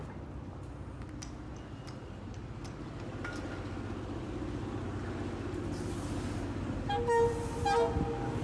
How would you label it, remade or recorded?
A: recorded